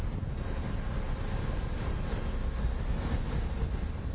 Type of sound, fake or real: real